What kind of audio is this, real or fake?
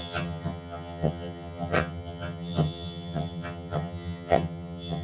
fake